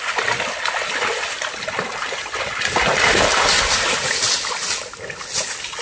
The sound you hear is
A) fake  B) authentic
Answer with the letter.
B